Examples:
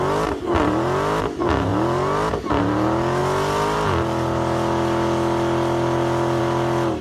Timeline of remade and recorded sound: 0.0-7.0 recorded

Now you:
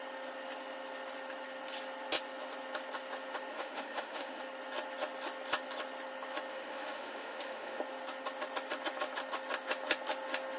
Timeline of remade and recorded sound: 0.0-3.5 recorded; 3.5-4.4 remade; 4.4-6.5 recorded; 6.5-7.8 remade; 7.8-10.6 recorded